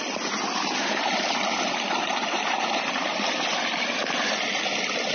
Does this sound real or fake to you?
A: real